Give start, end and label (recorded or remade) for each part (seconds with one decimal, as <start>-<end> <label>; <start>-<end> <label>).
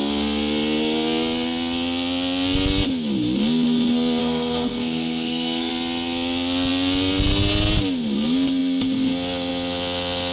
0.0-4.2 recorded; 4.2-5.7 remade; 5.7-10.3 recorded